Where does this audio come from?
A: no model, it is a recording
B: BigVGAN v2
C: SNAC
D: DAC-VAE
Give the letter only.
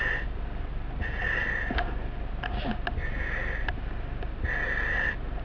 A